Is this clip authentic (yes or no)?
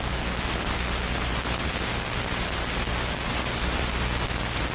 yes